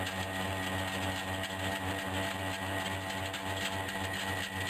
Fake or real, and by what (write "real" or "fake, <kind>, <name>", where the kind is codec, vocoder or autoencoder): real